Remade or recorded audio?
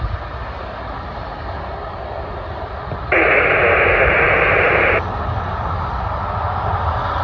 recorded